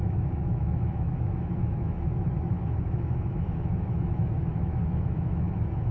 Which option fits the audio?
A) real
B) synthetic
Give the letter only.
B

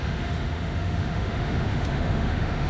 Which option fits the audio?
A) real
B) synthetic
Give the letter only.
B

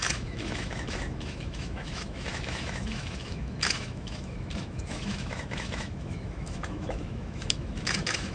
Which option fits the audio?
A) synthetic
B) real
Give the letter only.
A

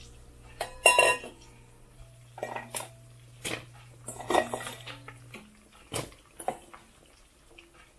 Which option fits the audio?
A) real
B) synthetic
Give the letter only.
A